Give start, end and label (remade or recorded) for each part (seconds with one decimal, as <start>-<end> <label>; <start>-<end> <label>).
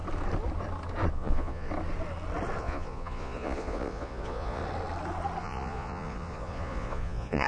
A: 0.0-1.1 recorded; 1.1-1.7 remade; 1.7-2.6 recorded; 2.6-4.6 remade; 4.6-5.4 recorded; 5.4-7.5 remade